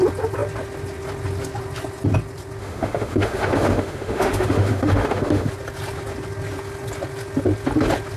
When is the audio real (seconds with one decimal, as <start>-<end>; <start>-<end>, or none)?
0.0-2.6; 5.5-8.2